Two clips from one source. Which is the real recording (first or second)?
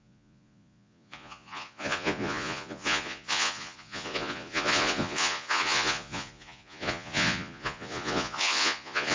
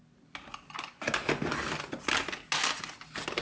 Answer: second